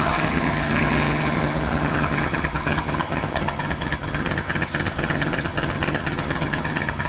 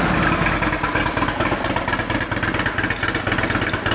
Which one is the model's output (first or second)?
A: first